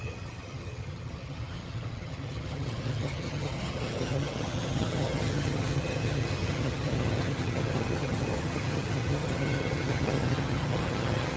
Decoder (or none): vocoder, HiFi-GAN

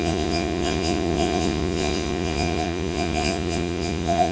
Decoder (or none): vocoder, Vocos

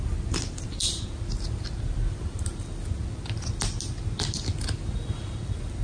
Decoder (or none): none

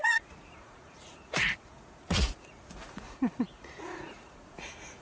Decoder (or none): vocoder, Vocos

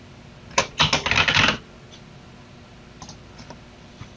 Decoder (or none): none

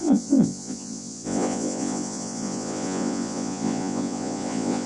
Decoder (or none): vocoder, Vocos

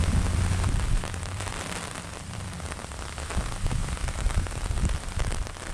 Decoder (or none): vocoder, BigVGAN v2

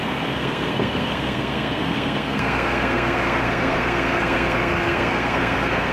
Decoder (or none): codec, SNAC